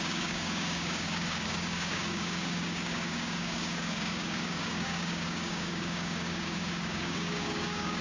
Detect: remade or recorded remade